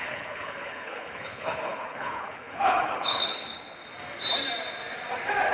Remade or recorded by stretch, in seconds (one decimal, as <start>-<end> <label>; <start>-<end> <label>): 0.0-3.8 remade; 3.8-5.5 recorded